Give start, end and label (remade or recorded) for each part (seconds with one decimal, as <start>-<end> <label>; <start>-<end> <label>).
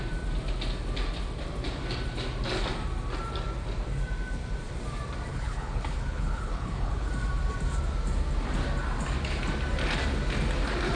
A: 0.0-5.3 recorded; 5.3-7.1 remade; 7.1-11.0 recorded